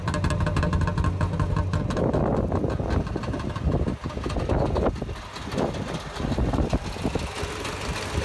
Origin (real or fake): real